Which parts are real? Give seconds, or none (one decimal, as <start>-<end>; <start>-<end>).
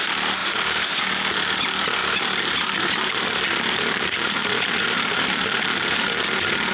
0.0-0.4; 1.0-2.0; 6.0-6.7